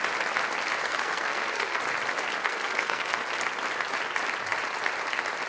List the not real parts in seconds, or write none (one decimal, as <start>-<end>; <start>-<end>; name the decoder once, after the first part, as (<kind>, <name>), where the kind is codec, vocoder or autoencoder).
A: 0.8-1.8 (codec, SNAC); 2.4-3.3